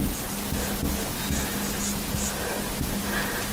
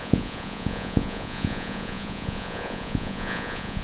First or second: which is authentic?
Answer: first